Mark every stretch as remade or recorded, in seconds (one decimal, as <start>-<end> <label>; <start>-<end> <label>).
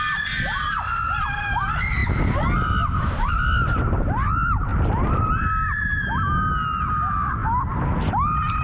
0.0-4.7 recorded; 4.7-6.1 remade; 6.1-8.6 recorded